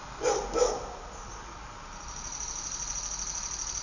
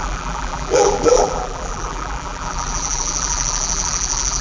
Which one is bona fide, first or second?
first